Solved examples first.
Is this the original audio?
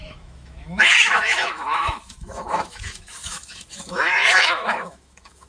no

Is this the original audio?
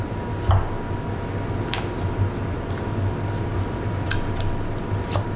yes